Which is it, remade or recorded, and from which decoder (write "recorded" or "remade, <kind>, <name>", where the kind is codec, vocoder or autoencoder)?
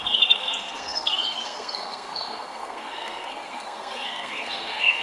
remade, codec, SNAC